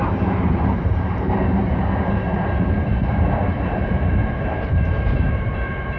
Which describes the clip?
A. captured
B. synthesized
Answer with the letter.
B